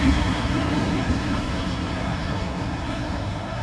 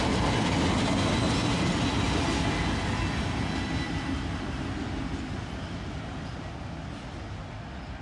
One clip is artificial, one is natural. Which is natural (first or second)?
second